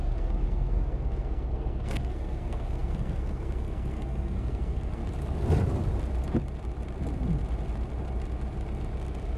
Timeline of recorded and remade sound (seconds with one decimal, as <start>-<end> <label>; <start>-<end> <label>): 0.0-5.0 remade; 5.0-9.4 recorded